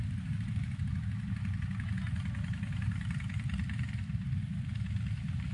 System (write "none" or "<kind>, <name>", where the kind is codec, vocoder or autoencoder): vocoder, BigVGAN v2